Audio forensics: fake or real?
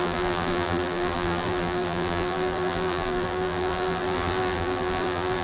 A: fake